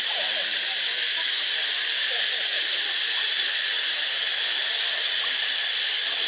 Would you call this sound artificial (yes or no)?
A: no